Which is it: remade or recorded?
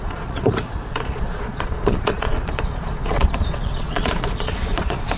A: remade